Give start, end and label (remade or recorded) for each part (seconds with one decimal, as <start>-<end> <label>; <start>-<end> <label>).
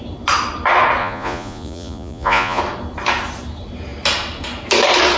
0.0-1.0 recorded; 1.0-2.6 remade; 2.6-5.2 recorded